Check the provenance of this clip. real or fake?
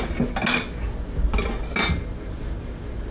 real